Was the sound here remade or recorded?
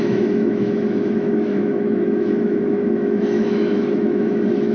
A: remade